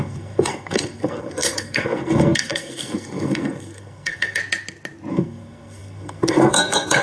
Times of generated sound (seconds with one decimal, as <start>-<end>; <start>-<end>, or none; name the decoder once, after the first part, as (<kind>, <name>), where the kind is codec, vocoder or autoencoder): 0.0-4.4 (codec, SNAC); 5.1-7.0